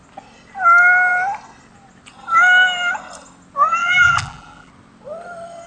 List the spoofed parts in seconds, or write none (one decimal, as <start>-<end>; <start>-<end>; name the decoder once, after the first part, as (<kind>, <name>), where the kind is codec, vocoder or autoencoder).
3.8-4.7 (vocoder, BigVGAN v2)